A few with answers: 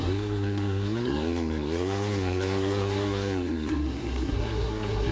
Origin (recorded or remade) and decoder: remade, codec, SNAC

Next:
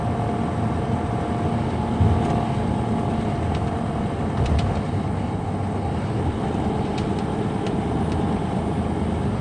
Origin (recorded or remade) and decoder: recorded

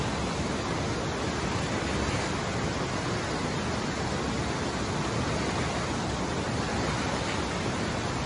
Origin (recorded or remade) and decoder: recorded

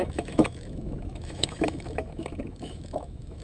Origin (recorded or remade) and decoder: remade, autoencoder, DAC-VAE